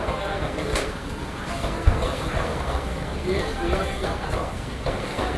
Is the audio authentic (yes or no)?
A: no